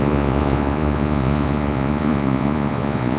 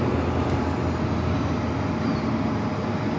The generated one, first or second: first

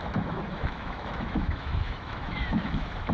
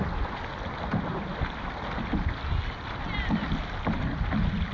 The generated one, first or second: first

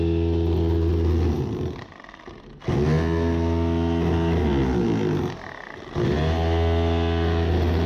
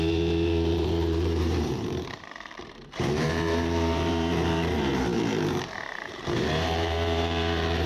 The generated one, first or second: second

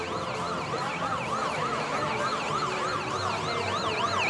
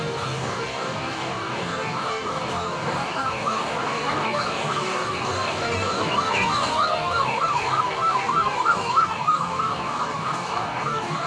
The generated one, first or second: second